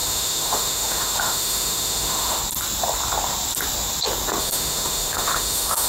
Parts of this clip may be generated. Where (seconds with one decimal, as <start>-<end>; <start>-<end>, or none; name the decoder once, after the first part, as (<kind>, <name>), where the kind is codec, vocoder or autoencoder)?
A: 0.0-2.4 (autoencoder, DAC-VAE); 4.4-5.9